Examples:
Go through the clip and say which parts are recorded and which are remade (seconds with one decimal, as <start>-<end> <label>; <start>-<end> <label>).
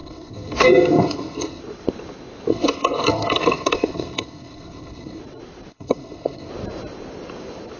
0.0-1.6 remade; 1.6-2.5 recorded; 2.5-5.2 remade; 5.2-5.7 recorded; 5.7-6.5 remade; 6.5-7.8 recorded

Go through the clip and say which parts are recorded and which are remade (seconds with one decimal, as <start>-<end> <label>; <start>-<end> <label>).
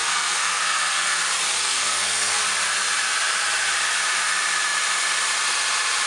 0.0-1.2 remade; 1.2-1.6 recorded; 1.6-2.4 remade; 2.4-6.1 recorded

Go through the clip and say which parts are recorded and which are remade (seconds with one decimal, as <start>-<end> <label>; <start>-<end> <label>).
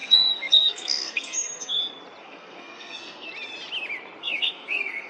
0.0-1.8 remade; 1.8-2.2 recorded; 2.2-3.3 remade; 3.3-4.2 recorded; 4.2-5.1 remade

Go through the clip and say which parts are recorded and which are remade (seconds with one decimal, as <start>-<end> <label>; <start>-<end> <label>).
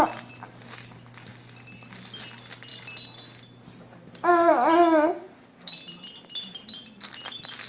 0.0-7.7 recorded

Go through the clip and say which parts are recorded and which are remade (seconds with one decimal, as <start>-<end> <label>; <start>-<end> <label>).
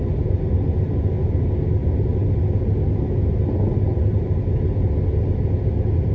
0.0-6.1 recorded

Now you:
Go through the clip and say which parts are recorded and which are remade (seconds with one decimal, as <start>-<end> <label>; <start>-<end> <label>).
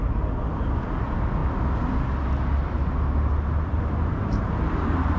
0.0-5.2 recorded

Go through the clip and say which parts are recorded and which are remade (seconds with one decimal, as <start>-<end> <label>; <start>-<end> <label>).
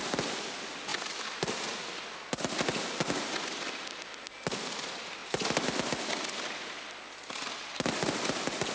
0.0-8.7 recorded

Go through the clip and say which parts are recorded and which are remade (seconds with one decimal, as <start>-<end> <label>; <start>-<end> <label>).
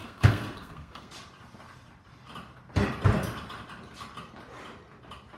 0.0-1.1 remade; 1.1-5.4 recorded